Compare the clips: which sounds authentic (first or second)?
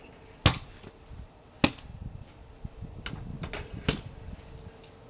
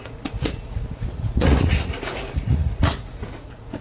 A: first